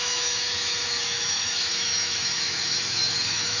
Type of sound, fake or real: fake